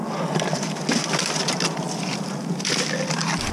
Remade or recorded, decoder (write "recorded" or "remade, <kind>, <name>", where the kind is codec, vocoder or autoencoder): recorded